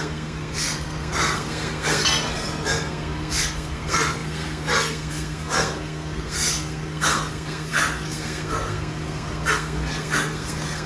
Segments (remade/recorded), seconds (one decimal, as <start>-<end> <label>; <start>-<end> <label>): 0.0-10.9 remade

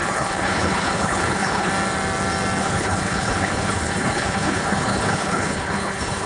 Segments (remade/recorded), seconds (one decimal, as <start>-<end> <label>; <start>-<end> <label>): 0.0-1.7 remade; 1.7-2.6 recorded; 2.6-6.3 remade